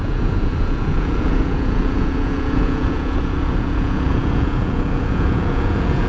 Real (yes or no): no